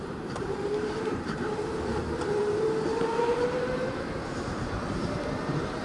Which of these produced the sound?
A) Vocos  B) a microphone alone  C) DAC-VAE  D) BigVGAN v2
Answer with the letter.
D